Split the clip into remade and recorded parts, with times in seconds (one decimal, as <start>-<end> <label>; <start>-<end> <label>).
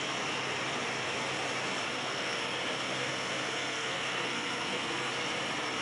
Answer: 0.0-1.9 recorded; 1.9-2.4 remade; 2.4-2.9 recorded; 2.9-5.1 remade; 5.1-5.8 recorded